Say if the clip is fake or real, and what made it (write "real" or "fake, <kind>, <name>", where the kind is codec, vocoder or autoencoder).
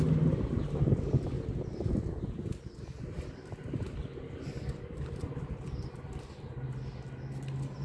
real